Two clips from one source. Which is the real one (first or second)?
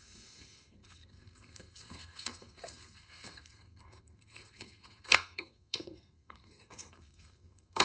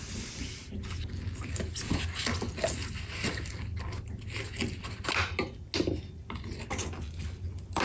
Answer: second